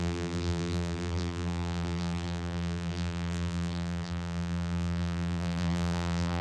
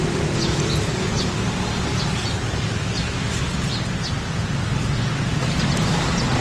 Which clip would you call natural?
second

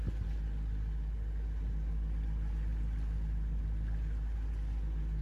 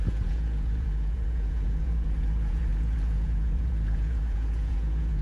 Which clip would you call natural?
first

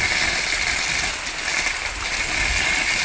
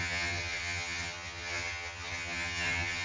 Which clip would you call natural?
first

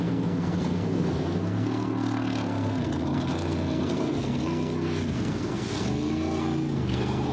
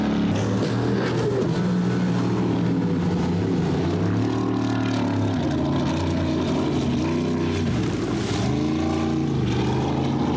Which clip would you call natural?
second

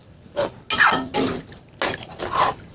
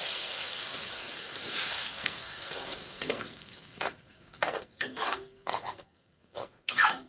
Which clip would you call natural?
first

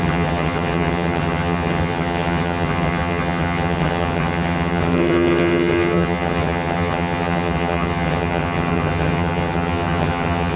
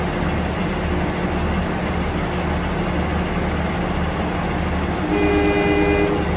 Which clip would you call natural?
second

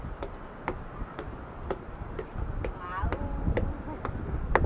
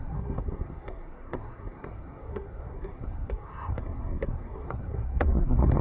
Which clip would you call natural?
first